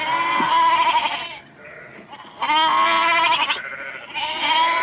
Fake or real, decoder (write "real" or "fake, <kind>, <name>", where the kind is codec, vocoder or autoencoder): real